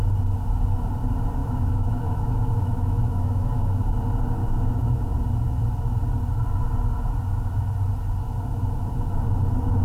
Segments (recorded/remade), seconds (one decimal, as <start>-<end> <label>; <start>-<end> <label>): 0.0-1.4 recorded; 1.4-3.9 remade; 3.9-4.4 recorded; 4.4-5.1 remade; 5.1-9.8 recorded